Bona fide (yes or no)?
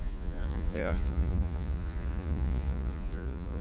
no